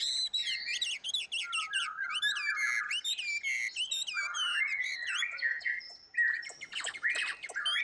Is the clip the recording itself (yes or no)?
yes